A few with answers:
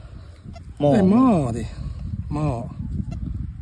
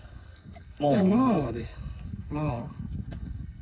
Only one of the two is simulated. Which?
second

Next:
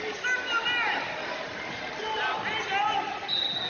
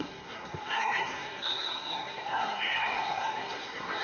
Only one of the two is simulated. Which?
second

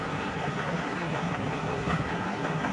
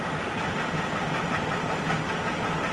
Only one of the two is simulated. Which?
first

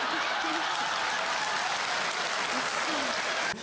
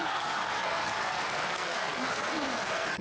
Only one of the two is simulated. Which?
second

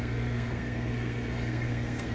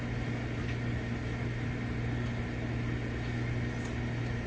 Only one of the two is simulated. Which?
first